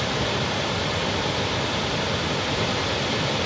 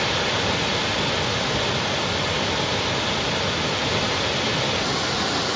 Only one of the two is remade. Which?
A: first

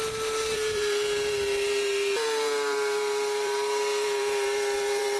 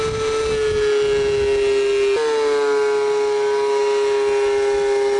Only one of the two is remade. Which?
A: first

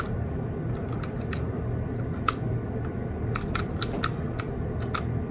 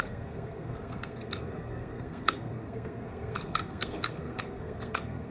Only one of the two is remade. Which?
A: second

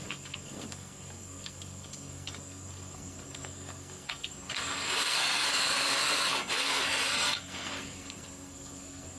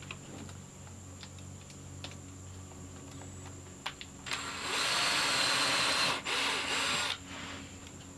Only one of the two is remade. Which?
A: first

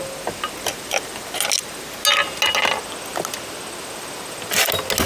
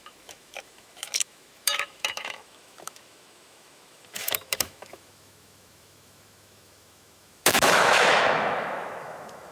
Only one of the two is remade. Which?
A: second